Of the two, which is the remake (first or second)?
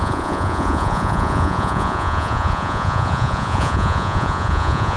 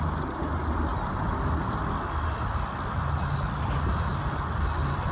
first